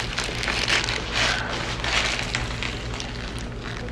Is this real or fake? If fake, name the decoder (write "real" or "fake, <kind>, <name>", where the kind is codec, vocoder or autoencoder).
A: real